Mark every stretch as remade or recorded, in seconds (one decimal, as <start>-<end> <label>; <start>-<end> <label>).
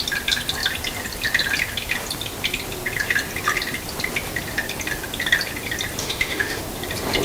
0.0-6.0 recorded; 6.0-6.6 remade; 6.6-7.2 recorded